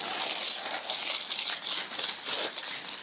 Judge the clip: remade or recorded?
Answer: recorded